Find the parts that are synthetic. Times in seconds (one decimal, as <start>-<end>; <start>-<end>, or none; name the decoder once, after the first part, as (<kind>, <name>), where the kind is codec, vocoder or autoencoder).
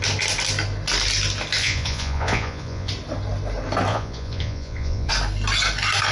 1.6-2.9 (vocoder, Vocos); 3.9-5.1